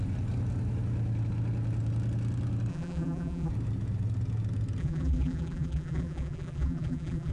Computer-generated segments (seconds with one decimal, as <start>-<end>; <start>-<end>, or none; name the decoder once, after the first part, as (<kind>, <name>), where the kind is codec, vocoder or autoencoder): 2.7-3.5 (vocoder, BigVGAN v2); 4.8-7.3